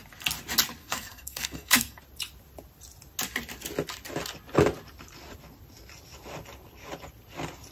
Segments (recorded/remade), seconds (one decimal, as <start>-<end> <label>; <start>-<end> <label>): 0.0-0.8 recorded; 0.8-2.0 remade; 2.0-7.7 recorded